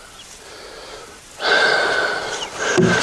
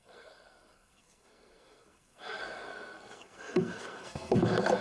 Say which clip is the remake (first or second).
second